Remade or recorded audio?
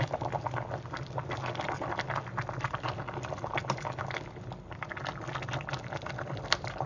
recorded